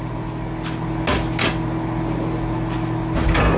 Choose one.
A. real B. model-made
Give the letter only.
A